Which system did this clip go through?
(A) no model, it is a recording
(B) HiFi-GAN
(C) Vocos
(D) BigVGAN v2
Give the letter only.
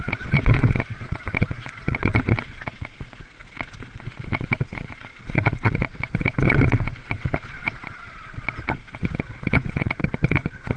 C